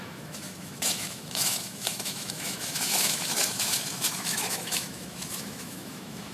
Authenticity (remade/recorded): remade